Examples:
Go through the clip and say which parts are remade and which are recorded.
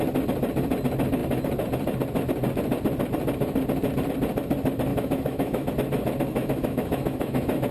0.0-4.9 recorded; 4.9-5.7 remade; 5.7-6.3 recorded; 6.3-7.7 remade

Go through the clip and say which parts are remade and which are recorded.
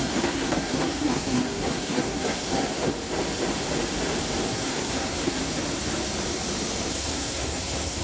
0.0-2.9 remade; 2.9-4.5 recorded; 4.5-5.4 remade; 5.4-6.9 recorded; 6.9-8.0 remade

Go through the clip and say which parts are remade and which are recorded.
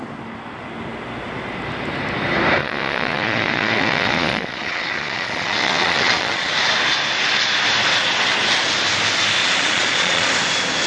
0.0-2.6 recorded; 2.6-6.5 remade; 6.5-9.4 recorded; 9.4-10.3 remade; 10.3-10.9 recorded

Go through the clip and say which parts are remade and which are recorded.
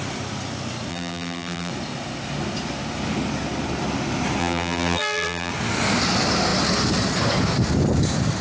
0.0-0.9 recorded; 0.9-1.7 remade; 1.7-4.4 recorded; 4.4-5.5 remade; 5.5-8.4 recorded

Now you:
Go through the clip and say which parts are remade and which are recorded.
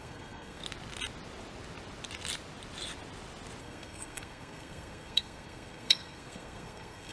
0.0-0.6 remade; 0.6-3.6 recorded; 3.6-7.1 remade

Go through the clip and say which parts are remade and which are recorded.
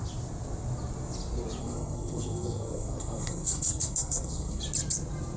0.0-1.6 recorded; 1.6-4.6 remade; 4.6-5.4 recorded